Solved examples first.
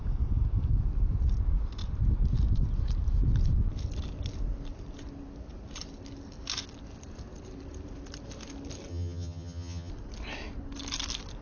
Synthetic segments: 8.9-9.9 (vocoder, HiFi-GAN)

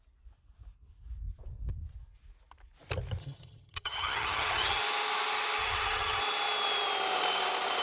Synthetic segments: 3.2-4.8 (vocoder, HiFi-GAN); 5.6-6.2

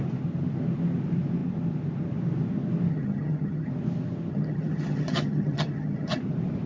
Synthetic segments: 2.9-3.7 (vocoder, HiFi-GAN); 4.3-6.2

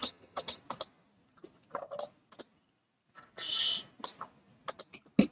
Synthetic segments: 0.0-0.6 (vocoder, HiFi-GAN)